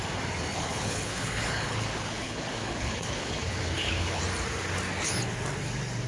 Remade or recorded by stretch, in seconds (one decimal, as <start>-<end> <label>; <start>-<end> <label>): 0.0-0.5 recorded; 0.5-4.2 remade; 4.2-6.1 recorded